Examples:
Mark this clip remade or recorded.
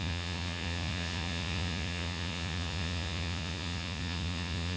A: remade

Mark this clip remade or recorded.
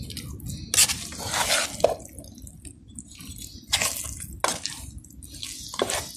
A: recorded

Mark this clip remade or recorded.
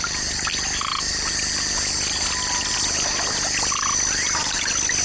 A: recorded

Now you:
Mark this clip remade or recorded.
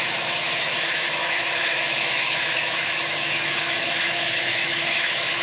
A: remade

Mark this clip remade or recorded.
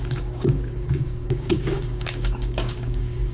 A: remade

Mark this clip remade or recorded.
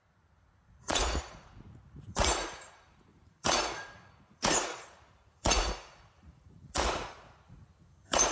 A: remade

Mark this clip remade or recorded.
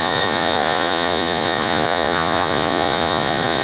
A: remade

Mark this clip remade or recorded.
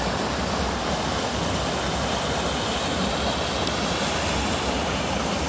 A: recorded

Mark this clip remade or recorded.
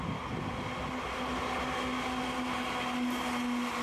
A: recorded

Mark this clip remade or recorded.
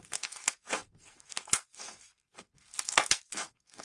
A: remade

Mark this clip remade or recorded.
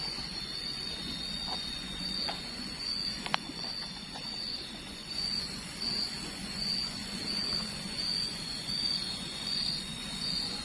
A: remade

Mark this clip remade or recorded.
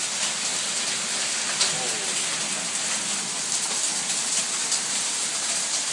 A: recorded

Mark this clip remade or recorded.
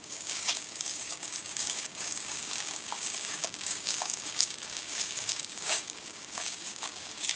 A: remade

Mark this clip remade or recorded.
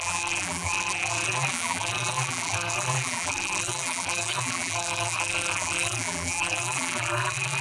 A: remade